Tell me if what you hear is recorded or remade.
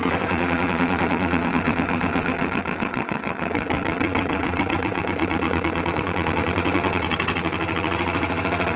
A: remade